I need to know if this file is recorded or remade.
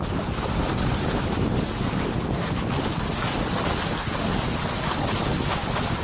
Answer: recorded